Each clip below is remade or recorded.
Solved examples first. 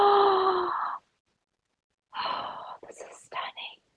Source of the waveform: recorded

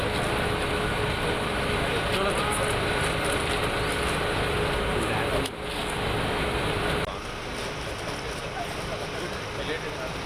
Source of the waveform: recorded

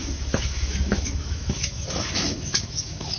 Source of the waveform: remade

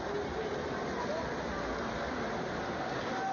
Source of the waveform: recorded